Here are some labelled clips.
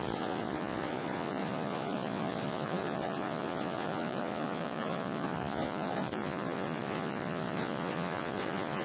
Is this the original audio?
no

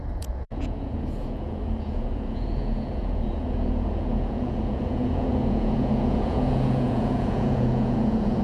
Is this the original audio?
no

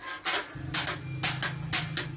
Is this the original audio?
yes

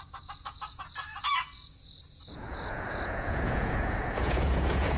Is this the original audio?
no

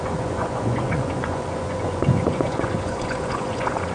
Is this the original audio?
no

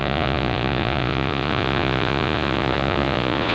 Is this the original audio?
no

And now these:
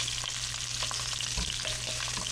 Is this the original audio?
yes